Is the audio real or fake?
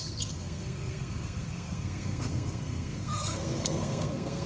fake